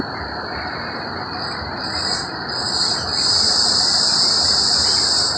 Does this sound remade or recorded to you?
recorded